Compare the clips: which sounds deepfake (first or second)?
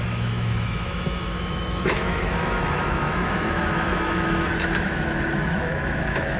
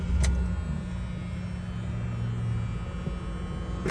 first